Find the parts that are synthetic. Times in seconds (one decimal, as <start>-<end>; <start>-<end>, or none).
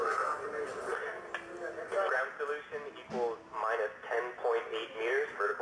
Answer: none